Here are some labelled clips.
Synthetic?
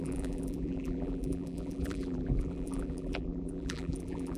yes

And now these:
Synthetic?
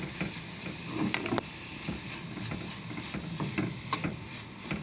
yes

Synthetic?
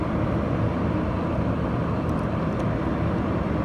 yes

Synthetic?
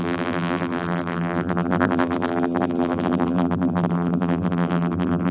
yes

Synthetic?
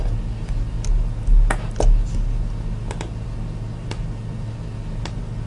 no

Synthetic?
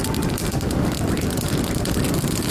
yes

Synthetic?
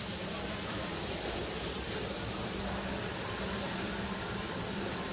yes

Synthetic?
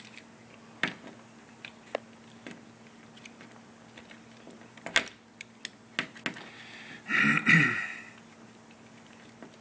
no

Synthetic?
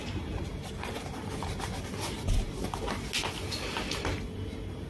no